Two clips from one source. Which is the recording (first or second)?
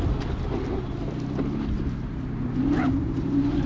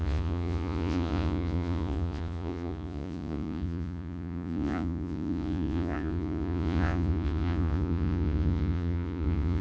first